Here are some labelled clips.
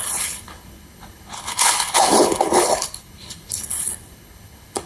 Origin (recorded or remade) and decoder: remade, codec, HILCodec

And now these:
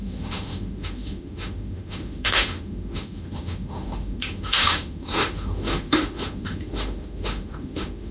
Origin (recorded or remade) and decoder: remade, autoencoder, DAC-VAE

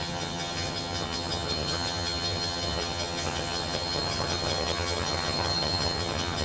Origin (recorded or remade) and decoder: remade, vocoder, HiFi-GAN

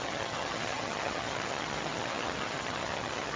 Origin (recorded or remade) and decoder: remade, vocoder, HiFi-GAN